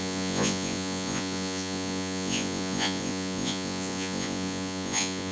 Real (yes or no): no